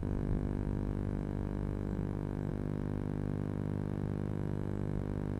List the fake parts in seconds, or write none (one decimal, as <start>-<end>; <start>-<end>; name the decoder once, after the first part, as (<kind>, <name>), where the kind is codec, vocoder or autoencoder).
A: 0.0-2.5 (autoencoder, DAC-VAE); 4.3-5.0